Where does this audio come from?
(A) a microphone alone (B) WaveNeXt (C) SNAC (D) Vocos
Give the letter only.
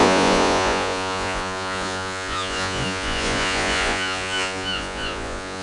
D